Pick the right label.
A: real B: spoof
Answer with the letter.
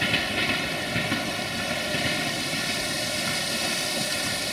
A